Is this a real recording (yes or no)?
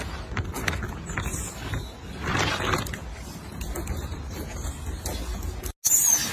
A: yes